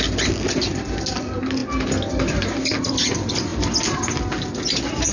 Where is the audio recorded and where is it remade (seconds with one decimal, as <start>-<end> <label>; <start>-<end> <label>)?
0.0-5.1 recorded